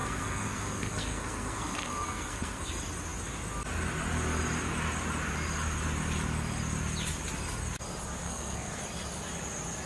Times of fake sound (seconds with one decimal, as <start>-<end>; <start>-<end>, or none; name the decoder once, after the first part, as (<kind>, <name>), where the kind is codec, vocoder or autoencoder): 0.0-2.7 (codec, SNAC); 8.2-8.8